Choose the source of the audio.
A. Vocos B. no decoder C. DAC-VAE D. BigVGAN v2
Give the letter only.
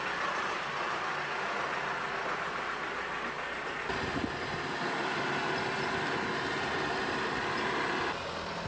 B